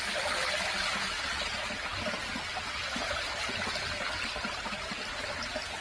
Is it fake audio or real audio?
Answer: real